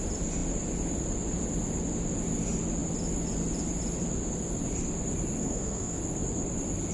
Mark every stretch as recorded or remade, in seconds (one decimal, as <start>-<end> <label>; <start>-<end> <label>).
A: 0.0-5.4 recorded; 5.4-6.0 remade; 6.0-6.9 recorded